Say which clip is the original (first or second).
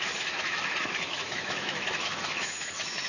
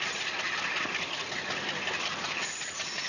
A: second